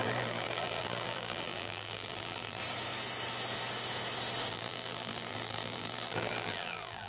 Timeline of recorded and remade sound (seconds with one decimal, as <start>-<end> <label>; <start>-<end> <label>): 0.0-2.6 remade; 2.6-4.5 recorded; 4.5-7.1 remade